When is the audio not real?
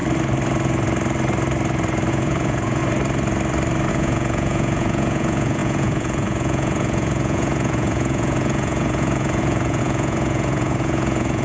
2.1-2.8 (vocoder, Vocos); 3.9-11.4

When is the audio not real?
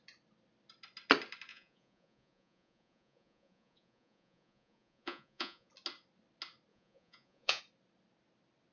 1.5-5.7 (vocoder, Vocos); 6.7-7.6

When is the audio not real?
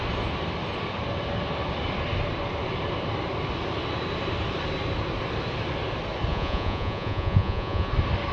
6.3-7.9 (vocoder, Vocos)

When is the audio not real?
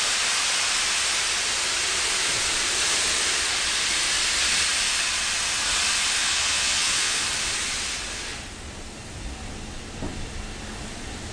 6.2-7.2 (vocoder, Vocos)